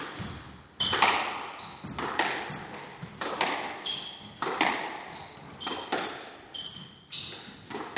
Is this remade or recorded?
recorded